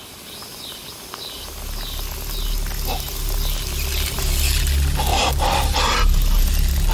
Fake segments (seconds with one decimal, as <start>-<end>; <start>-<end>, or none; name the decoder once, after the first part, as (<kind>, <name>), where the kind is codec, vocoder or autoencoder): 5.1-6.5 (vocoder, BigVGAN v2)